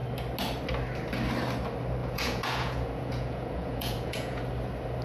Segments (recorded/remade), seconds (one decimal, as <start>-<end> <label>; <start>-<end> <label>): 0.0-2.0 recorded; 2.0-4.4 remade; 4.4-5.0 recorded